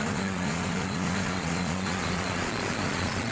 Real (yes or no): no